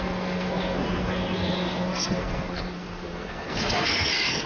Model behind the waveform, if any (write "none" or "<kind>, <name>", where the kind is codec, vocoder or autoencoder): codec, SNAC